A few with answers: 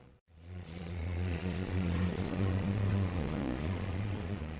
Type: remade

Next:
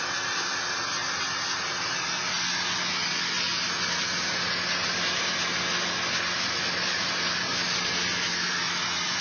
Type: recorded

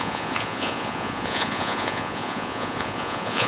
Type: remade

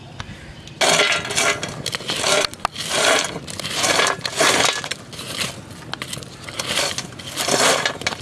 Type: recorded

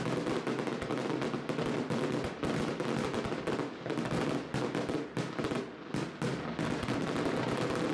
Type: recorded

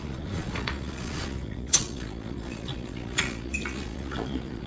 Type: remade